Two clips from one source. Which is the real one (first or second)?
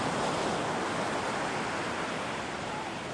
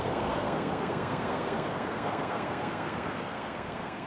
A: first